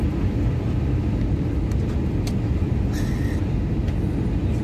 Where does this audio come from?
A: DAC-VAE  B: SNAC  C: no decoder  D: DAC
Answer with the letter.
C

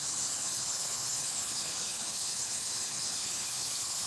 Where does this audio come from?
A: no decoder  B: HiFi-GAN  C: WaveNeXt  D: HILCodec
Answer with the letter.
D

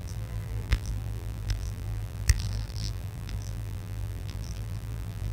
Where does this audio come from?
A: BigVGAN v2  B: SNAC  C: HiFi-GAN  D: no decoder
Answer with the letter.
A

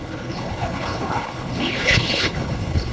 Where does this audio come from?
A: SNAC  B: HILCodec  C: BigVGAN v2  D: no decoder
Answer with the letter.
B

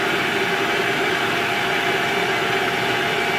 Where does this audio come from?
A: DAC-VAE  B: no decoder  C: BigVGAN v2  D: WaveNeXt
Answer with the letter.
B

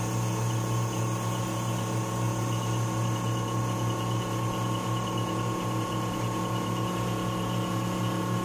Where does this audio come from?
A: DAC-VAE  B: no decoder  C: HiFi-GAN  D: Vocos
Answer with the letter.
B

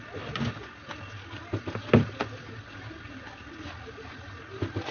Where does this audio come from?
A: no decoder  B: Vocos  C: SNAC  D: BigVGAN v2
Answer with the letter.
A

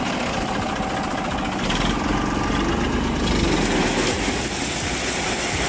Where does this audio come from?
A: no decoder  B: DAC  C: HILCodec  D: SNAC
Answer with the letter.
A